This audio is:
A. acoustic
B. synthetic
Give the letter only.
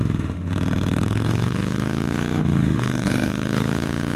B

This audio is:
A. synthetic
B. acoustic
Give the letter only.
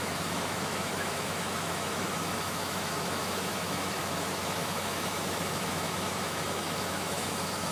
A